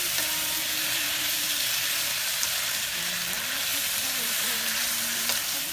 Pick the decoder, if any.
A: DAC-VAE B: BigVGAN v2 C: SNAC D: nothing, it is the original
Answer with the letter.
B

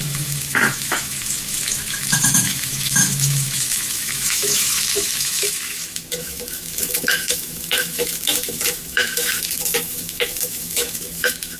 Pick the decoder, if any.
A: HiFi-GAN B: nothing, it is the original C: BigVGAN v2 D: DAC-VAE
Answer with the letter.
D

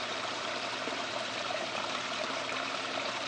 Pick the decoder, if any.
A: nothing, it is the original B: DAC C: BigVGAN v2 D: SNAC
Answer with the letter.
C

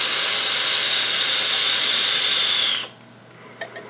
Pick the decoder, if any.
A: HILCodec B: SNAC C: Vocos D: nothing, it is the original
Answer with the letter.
D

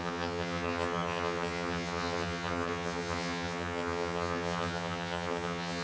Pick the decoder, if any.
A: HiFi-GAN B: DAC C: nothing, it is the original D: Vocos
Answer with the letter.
A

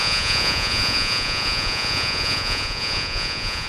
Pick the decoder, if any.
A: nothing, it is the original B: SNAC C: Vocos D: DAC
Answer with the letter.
C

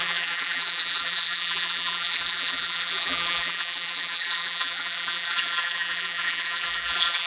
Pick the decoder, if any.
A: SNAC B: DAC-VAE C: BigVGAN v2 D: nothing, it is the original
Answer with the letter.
C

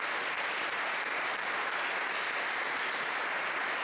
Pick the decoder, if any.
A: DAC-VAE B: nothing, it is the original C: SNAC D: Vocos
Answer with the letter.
B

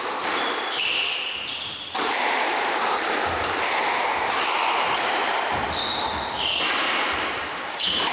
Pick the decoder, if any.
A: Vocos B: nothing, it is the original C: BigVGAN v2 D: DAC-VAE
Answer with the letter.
C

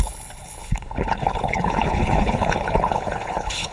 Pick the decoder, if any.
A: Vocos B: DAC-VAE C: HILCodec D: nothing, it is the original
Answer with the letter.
C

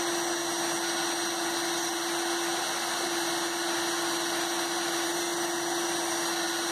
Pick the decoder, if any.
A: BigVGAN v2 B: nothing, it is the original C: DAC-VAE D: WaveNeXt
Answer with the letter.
B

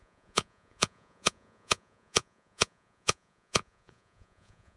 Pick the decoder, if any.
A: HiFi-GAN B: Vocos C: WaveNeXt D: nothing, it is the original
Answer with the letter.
B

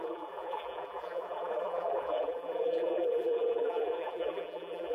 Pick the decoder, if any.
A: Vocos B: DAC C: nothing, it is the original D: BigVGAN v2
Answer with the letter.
D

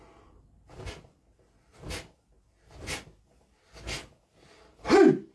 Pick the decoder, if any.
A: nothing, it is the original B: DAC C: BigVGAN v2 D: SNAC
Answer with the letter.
A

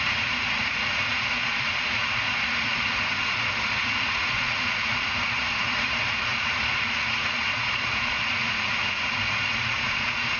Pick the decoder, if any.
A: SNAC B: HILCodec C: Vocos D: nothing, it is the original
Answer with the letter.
C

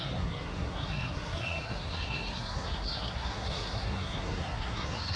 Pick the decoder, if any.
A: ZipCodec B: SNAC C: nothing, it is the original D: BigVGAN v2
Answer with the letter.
B